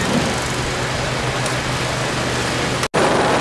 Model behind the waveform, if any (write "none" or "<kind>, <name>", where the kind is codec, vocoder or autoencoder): none